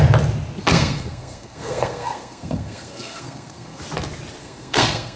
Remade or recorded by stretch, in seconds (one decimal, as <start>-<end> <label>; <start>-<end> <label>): 0.0-0.7 recorded; 0.7-3.8 remade; 3.8-4.4 recorded; 4.4-5.2 remade